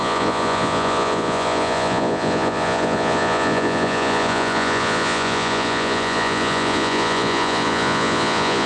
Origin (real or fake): fake